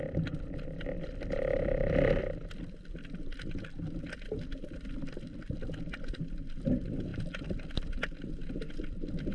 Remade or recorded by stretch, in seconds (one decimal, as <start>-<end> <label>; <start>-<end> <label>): 0.0-9.3 remade